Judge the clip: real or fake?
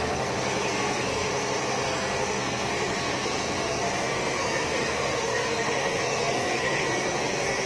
fake